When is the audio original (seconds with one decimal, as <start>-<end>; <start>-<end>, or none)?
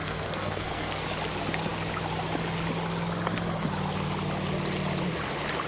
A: 1.0-5.7